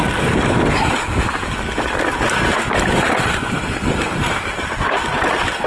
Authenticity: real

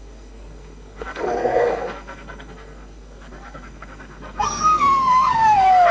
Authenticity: fake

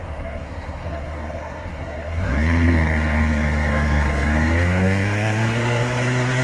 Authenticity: fake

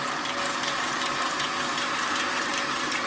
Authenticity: real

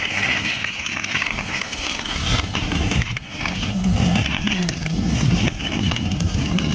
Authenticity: fake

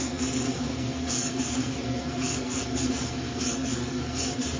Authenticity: fake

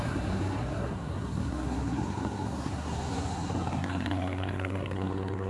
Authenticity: fake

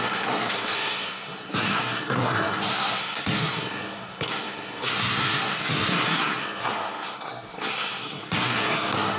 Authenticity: fake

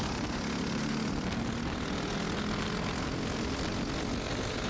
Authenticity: real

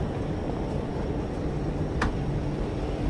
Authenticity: real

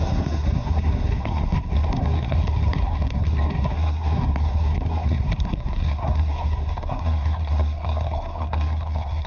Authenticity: fake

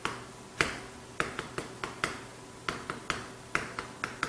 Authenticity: real